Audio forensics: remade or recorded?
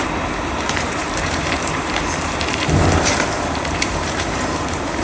remade